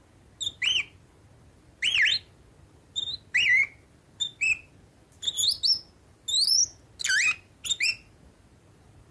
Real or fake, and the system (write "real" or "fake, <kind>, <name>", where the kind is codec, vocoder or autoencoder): real